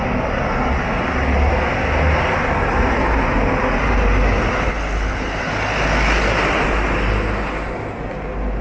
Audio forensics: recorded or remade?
recorded